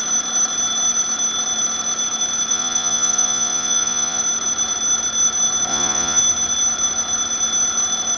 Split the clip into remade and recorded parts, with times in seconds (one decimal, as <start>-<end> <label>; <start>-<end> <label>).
0.0-2.5 recorded; 2.5-4.2 remade; 4.2-5.7 recorded; 5.7-6.2 remade; 6.2-8.2 recorded